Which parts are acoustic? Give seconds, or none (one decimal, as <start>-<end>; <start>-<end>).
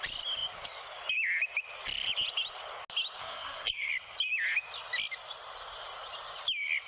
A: 0.0-3.2; 3.9-6.9